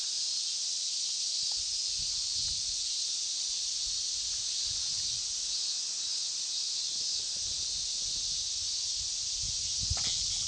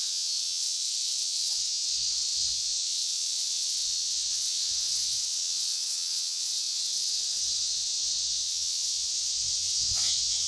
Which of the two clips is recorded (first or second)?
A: first